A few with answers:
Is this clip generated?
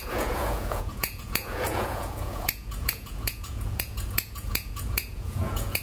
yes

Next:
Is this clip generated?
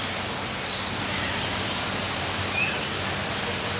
no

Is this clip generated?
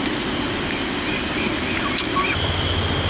no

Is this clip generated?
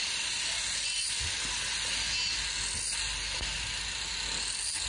no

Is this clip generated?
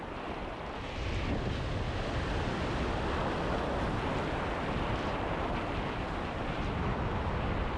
no